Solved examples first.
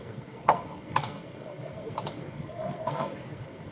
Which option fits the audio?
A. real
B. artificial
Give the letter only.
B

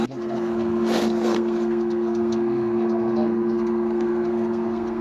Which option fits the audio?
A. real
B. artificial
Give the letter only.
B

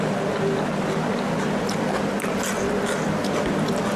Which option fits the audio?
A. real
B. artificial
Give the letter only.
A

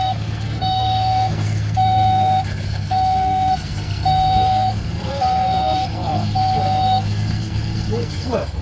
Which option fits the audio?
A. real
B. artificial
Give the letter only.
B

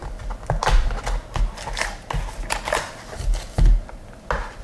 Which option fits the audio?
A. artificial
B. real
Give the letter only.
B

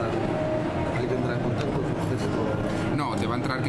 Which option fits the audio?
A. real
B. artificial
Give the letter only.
A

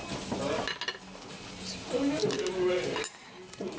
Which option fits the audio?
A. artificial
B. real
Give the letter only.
B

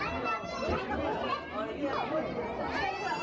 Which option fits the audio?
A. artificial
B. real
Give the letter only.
B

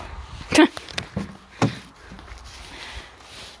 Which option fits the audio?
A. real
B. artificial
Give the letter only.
A